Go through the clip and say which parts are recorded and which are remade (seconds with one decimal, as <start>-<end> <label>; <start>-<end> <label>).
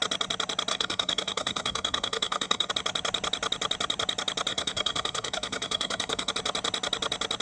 0.0-0.7 recorded; 0.7-2.7 remade; 2.7-4.5 recorded; 4.5-6.3 remade; 6.3-7.4 recorded